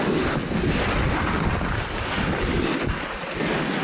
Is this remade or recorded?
recorded